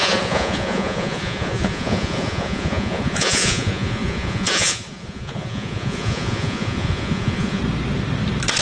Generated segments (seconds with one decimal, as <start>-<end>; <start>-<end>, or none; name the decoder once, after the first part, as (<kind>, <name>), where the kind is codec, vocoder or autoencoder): 0.0-7.6 (vocoder, Vocos)